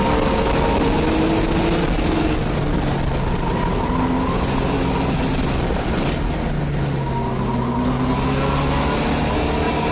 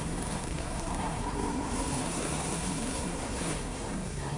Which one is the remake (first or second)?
second